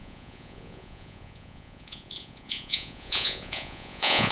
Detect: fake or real fake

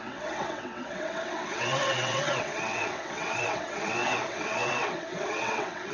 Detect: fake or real fake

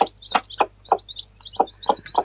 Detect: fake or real real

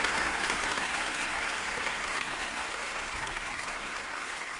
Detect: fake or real fake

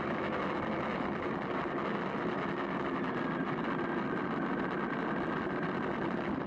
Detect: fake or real real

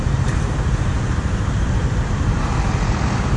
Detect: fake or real fake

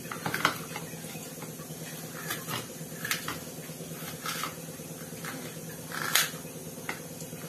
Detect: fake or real real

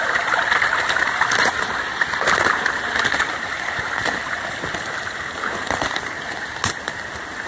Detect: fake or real real